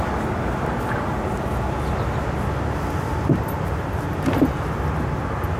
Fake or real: real